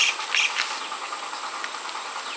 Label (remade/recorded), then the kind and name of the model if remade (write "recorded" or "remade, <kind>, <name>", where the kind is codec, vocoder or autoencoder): recorded